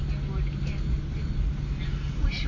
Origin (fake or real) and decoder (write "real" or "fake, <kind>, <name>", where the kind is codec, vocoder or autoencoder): real